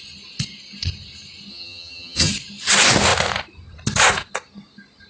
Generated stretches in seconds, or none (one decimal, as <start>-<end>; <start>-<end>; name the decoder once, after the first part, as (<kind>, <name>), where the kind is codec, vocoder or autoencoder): 1.5-2.3 (vocoder, HiFi-GAN)